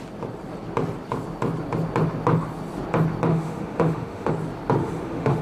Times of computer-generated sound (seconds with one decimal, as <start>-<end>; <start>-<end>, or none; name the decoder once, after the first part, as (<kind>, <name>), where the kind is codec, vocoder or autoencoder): 3.3-4.3 (autoencoder, DAC-VAE); 4.8-5.4